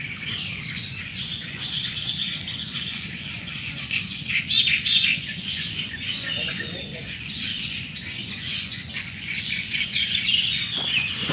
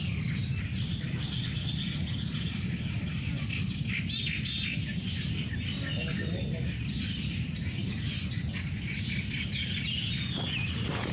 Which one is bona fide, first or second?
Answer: second